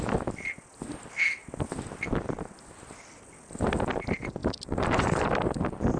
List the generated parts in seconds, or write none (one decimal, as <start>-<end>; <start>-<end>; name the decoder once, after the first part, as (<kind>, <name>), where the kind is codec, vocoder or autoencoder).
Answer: 4.4-5.6 (vocoder, BigVGAN v2)